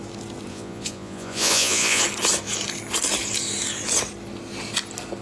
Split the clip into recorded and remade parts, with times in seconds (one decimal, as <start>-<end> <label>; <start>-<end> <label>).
0.0-0.5 recorded; 0.5-2.0 remade; 2.0-5.2 recorded